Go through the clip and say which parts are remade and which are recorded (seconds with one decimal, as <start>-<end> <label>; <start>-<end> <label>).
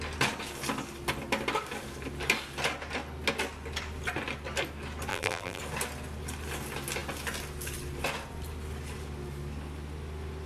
0.0-5.1 recorded; 5.1-5.6 remade; 5.6-10.5 recorded